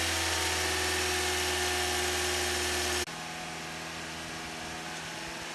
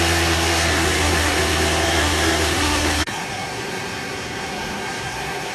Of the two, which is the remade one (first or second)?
second